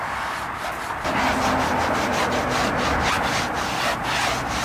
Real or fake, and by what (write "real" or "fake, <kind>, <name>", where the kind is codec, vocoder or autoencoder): real